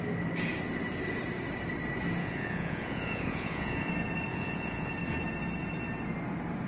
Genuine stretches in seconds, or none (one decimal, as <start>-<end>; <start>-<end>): 0.0-2.2; 3.9-4.3; 4.9-6.7